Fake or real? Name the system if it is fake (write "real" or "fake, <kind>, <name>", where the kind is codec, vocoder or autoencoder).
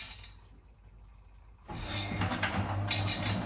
real